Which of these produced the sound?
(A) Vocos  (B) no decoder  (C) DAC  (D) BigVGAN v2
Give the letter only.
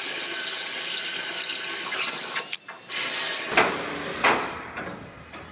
B